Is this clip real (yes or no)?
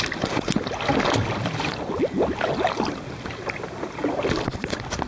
yes